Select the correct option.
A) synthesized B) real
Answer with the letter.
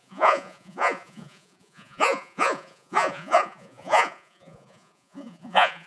A